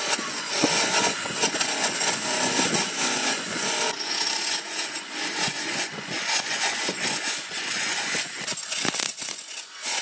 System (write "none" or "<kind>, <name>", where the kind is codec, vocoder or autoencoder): vocoder, Vocos